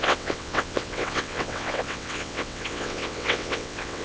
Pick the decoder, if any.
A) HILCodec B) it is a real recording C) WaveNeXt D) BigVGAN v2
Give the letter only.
C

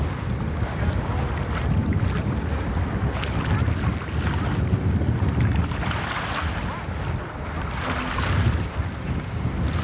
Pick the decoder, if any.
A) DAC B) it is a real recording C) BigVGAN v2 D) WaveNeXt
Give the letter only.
B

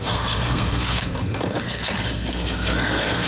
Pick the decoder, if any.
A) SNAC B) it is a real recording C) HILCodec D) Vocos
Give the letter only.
A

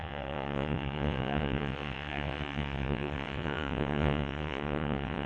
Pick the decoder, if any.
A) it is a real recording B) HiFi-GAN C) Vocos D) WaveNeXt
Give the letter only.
D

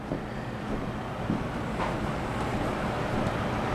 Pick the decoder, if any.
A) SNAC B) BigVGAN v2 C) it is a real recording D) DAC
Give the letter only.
C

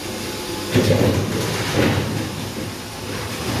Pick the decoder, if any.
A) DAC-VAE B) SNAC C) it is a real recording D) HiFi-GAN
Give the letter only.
C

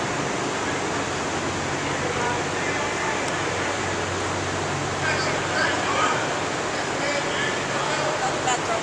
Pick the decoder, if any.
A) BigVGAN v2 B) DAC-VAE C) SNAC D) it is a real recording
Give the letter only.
D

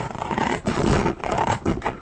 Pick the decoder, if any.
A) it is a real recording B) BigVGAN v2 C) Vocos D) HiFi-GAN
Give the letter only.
C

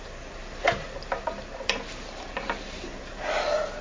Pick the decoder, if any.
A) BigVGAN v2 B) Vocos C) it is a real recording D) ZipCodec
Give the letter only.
A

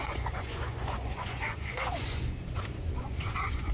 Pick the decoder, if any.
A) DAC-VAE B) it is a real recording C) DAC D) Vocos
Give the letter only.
D